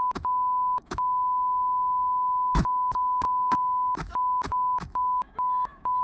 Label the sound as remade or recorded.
remade